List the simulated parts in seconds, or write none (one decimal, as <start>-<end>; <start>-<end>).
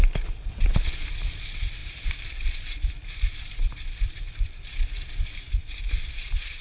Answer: 1.8-5.5